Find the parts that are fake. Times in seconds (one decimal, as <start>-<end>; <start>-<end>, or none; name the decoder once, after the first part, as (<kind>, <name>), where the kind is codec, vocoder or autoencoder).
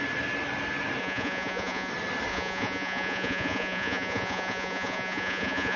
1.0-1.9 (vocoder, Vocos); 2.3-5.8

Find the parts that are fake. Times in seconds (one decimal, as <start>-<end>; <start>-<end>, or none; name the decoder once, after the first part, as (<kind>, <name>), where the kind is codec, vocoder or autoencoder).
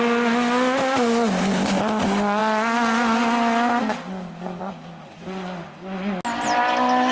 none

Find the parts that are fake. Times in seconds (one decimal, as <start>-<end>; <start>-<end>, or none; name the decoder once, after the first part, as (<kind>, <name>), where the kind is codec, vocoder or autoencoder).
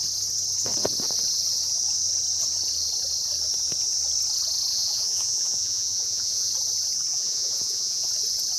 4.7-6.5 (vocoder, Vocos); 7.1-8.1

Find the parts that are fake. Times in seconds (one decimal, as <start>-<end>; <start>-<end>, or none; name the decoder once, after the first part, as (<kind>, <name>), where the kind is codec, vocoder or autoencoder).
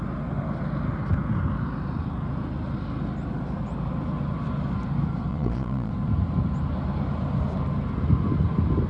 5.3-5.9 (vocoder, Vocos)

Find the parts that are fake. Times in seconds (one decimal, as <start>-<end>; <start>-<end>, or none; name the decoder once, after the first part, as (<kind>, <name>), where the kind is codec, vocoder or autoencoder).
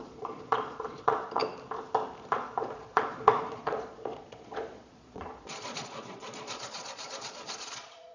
0.0-1.4 (vocoder, Vocos); 2.2-8.1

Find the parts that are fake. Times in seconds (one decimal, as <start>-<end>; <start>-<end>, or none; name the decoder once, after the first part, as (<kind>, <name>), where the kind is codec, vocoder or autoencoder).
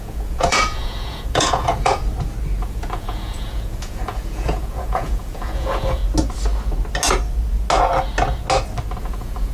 0.0-2.0 (vocoder, Vocos); 2.6-6.0; 9.0-9.5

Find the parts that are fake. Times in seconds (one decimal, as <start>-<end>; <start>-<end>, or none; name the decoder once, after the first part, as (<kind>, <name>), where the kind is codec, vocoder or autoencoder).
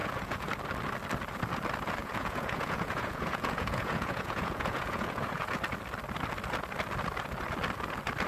0.0-0.5 (vocoder, Vocos); 2.0-5.6